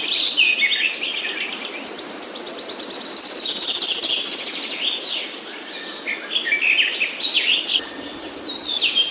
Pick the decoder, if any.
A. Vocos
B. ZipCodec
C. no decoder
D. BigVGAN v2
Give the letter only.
C